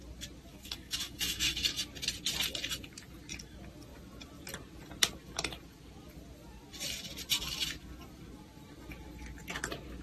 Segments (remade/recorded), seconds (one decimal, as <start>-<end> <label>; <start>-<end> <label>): 0.0-0.5 recorded; 0.5-1.8 remade; 1.8-10.0 recorded